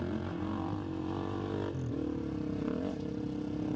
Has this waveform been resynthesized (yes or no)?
no